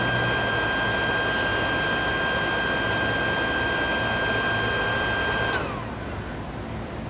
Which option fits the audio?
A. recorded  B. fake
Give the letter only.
A